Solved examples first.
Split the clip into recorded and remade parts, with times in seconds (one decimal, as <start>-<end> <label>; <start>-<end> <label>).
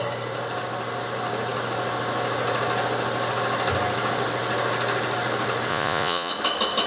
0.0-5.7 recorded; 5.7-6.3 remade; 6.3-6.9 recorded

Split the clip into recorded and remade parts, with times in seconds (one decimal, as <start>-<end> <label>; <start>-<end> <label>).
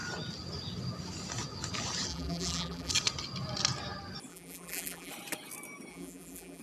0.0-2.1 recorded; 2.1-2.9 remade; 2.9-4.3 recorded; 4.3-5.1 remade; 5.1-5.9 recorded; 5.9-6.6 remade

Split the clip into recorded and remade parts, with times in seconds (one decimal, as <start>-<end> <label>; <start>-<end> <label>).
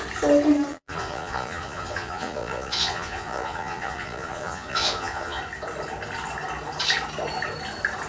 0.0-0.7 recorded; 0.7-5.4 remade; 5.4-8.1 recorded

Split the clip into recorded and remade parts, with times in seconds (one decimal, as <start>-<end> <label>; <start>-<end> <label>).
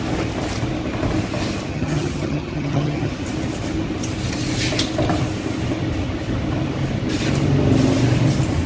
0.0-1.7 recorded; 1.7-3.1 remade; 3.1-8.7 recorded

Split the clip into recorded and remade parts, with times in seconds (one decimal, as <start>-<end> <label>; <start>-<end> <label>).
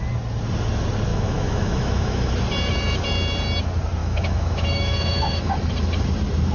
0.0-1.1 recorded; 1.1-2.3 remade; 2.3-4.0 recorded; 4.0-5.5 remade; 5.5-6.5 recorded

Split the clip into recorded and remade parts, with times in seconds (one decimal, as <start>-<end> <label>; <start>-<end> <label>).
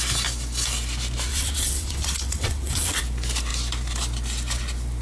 0.0-1.3 recorded; 1.3-3.0 remade; 3.0-5.0 recorded